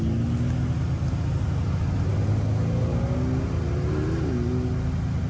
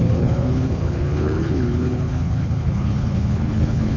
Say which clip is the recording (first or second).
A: first